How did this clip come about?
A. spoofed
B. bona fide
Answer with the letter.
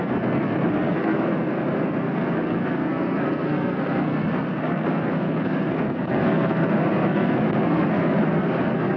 A